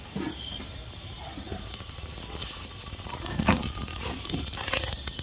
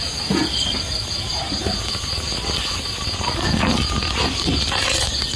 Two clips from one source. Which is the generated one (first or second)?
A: first